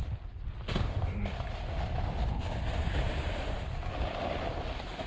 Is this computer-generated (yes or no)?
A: no